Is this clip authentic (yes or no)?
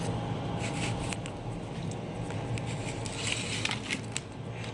yes